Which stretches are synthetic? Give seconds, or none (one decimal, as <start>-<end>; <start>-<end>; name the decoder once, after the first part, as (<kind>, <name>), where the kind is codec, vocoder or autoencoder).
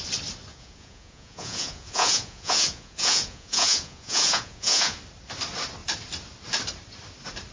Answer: 0.5-5.0 (vocoder, Vocos)